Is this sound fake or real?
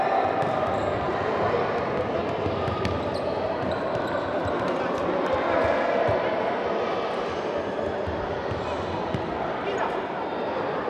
real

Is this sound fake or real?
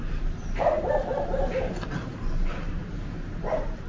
fake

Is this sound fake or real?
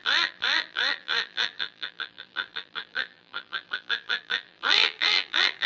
fake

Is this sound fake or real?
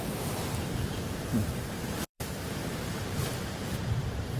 fake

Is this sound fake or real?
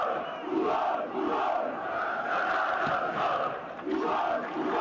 real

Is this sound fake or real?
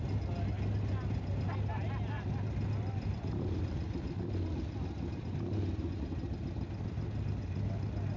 real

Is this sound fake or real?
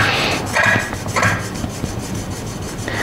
real